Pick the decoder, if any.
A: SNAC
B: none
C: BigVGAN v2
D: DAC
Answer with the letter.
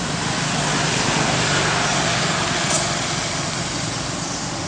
B